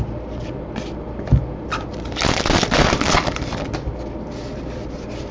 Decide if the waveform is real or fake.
real